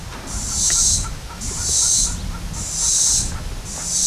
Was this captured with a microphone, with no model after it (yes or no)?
yes